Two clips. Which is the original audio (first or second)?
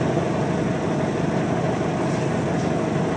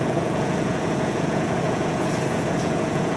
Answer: first